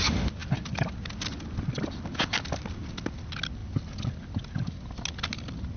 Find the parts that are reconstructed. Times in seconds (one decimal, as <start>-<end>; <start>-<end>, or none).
none